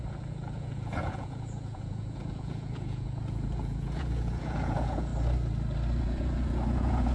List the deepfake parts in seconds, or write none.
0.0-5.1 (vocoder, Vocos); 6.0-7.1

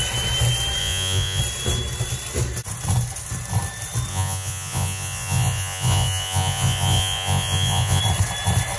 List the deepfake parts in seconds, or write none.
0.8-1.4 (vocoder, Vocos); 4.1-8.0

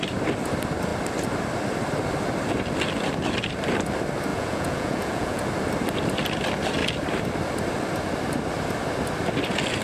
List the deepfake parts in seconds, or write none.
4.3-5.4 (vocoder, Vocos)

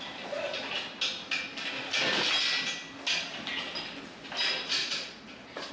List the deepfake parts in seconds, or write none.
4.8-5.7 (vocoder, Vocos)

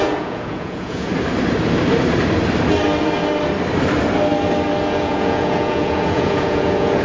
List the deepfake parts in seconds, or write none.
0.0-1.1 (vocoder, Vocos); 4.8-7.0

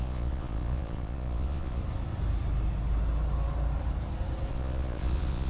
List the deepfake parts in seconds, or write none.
0.0-1.8 (vocoder, Vocos); 4.5-5.5